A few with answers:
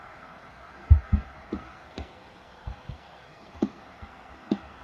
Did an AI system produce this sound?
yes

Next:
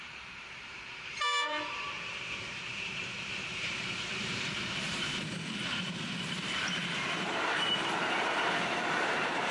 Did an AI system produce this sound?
yes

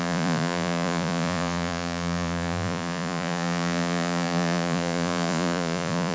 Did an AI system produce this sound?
yes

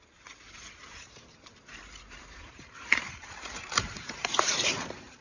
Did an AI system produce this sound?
yes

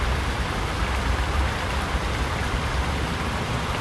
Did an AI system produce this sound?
yes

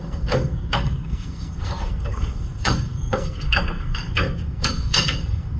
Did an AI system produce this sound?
yes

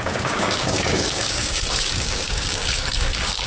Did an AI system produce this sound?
yes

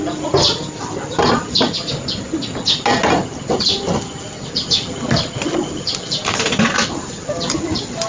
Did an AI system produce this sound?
no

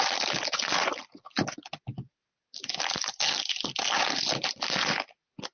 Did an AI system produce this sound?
no